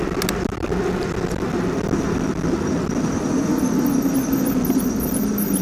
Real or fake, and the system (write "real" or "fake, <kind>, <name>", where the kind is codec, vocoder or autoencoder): real